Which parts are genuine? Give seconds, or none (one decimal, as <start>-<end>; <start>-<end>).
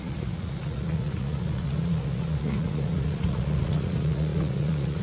none